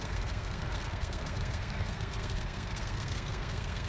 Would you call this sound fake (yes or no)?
yes